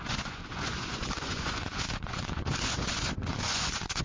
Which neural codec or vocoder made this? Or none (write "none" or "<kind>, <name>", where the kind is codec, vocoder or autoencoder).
vocoder, Vocos